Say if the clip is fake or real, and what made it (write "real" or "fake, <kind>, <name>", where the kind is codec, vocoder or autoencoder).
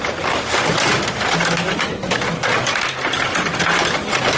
real